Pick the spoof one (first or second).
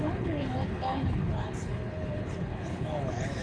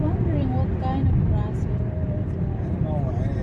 first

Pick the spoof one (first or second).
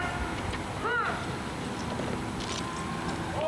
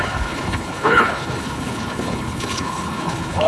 second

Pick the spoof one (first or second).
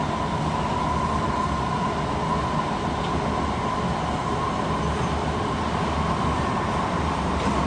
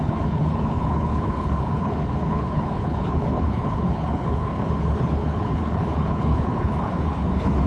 second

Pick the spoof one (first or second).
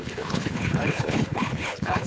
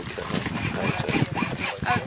first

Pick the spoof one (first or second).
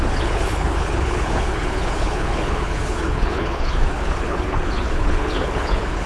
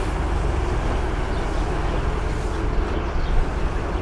first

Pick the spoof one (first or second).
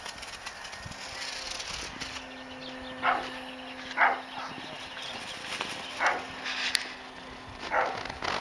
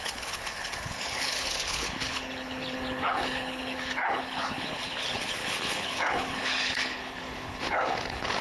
second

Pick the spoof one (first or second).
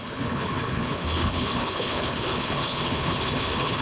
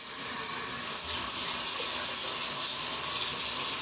first